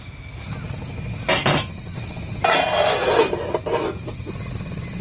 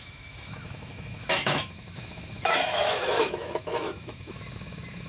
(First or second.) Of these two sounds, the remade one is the second